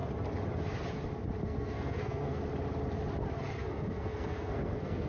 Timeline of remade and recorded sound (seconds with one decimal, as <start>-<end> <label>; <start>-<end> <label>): 0.0-1.4 recorded; 1.4-2.4 remade; 2.4-3.6 recorded; 3.6-5.1 remade